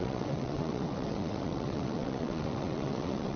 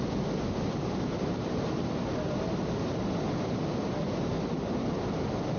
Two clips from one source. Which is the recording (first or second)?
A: second